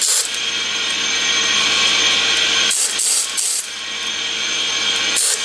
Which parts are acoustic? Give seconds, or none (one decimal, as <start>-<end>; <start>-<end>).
0.0-5.4